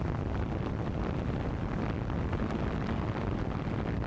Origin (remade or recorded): recorded